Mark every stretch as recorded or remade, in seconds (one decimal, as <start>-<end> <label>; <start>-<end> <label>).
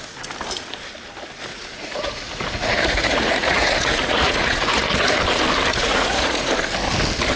0.0-1.5 recorded; 1.5-5.2 remade; 5.2-5.7 recorded; 5.7-6.5 remade; 6.5-7.4 recorded